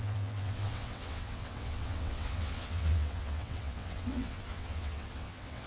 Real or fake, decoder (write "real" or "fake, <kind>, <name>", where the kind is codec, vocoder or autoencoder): fake, vocoder, WaveNeXt